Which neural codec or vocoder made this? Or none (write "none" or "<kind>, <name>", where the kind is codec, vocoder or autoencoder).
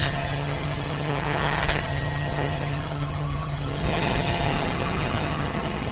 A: vocoder, HiFi-GAN